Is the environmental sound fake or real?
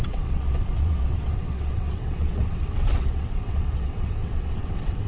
fake